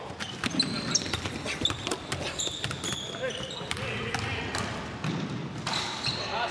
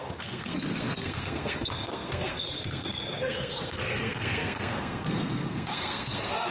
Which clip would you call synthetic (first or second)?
second